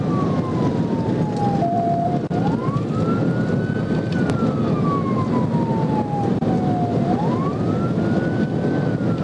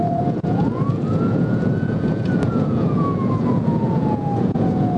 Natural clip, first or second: first